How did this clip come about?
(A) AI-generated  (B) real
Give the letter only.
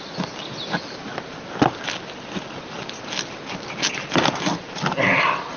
B